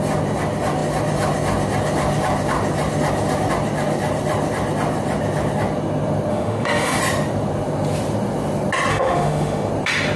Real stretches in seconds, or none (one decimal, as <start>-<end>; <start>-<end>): 0.0-6.3; 7.0-8.9; 9.7-10.2